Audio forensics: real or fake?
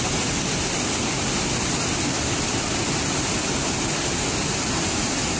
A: real